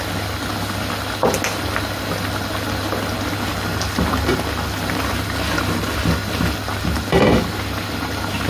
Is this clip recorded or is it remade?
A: recorded